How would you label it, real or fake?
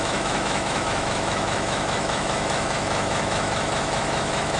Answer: fake